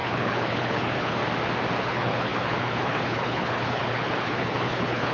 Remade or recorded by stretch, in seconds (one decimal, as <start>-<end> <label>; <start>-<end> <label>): 0.0-1.2 remade; 1.2-1.8 recorded; 1.8-5.1 remade